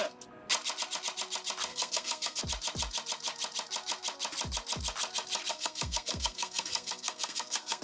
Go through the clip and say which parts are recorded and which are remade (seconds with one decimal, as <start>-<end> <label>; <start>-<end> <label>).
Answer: 0.0-1.7 recorded; 1.7-2.4 remade; 2.4-5.5 recorded; 5.5-7.8 remade